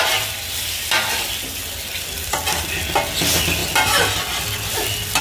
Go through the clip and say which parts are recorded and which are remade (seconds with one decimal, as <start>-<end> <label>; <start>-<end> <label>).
0.0-5.2 recorded

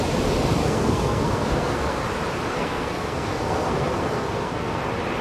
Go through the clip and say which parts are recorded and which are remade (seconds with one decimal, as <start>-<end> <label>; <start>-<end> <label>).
0.0-0.6 recorded; 0.6-2.0 remade; 2.0-2.5 recorded; 2.5-4.8 remade; 4.8-5.2 recorded

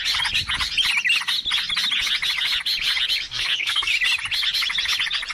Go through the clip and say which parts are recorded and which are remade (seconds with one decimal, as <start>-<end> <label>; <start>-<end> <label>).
0.0-3.3 recorded; 3.3-3.9 remade; 3.9-5.3 recorded

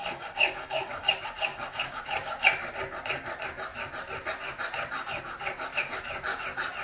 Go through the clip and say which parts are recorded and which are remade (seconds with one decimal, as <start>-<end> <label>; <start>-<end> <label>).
0.0-1.1 remade; 1.1-1.5 recorded; 1.5-2.0 remade; 2.0-6.8 recorded

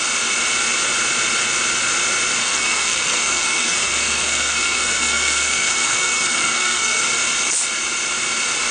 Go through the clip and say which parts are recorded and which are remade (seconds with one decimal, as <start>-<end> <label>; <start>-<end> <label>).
0.0-2.4 recorded; 2.4-7.0 remade; 7.0-8.7 recorded

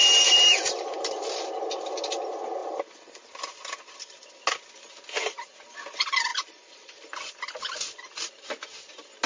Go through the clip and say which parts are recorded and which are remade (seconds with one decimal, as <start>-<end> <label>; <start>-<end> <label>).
0.0-2.6 recorded; 2.6-4.2 remade; 4.2-6.3 recorded; 6.3-8.3 remade; 8.3-9.3 recorded

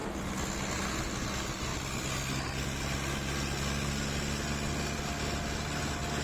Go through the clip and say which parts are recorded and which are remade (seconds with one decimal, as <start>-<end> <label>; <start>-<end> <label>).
0.0-6.2 recorded